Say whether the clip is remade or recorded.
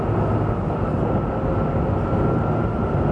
recorded